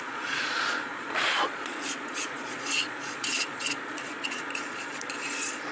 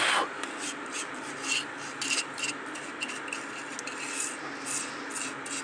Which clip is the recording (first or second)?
second